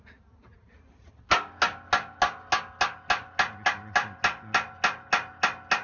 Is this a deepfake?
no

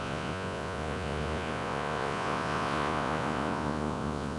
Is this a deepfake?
yes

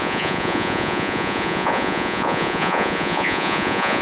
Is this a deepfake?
yes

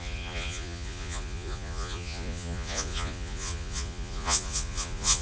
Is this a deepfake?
yes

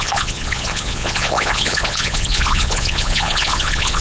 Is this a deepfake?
yes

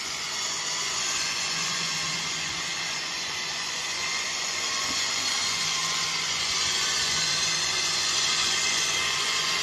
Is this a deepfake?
yes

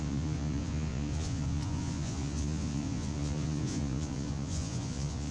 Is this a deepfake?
yes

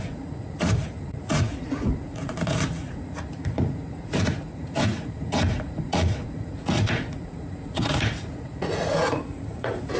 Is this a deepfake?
yes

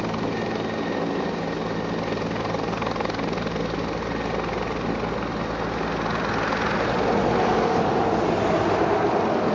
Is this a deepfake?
no